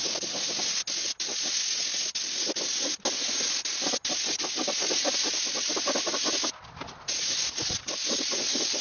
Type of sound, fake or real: real